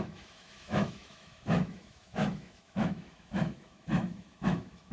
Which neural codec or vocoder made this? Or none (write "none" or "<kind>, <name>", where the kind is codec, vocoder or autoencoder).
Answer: autoencoder, DAC-VAE